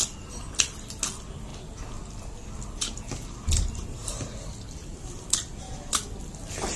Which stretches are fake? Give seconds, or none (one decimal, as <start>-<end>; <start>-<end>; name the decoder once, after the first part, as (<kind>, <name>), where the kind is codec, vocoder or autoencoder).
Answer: none